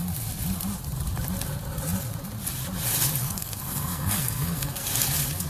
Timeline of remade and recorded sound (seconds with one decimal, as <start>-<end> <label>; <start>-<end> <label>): 0.0-3.2 recorded; 3.2-4.9 remade; 4.9-5.5 recorded